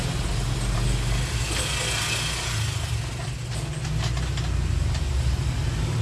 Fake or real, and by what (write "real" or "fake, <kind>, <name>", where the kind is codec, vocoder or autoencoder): real